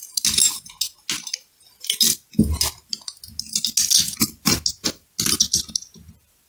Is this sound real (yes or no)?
yes